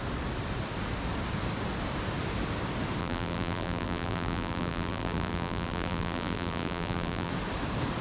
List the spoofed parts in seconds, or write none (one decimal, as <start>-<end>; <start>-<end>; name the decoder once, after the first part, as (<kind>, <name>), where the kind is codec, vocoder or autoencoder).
3.0-7.3 (vocoder, BigVGAN v2)